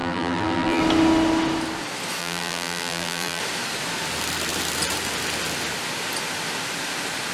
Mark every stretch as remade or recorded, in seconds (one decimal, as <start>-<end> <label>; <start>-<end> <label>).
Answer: 0.0-0.8 remade; 0.8-2.2 recorded; 2.2-3.4 remade; 3.4-7.3 recorded